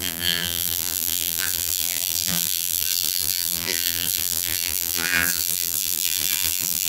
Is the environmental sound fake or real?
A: fake